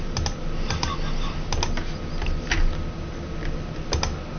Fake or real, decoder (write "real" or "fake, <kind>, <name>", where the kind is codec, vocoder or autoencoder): real